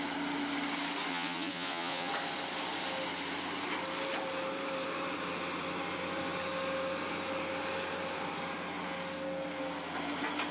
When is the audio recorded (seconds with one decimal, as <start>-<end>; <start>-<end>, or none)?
0.0-1.1; 2.1-10.5